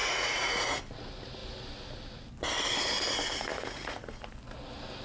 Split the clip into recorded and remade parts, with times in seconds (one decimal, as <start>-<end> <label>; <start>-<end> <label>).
0.0-0.8 remade; 0.8-3.5 recorded; 3.5-4.3 remade; 4.3-5.0 recorded